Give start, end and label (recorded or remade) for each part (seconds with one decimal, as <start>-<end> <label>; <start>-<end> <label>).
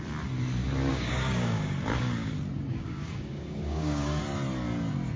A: 0.0-0.9 recorded; 0.9-2.3 remade; 2.3-2.7 recorded; 2.7-4.2 remade; 4.2-5.2 recorded